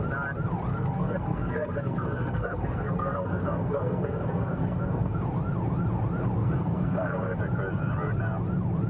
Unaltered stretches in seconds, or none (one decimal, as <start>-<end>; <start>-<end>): 0.0-0.7; 5.2-6.4; 7.4-8.9